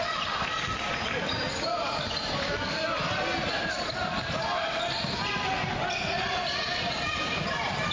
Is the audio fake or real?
real